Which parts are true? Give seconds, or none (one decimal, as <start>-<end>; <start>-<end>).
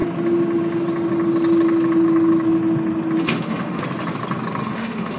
0.0-3.2; 3.8-4.6